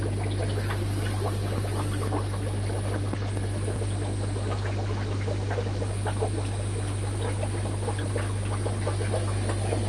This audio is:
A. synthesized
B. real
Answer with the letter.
B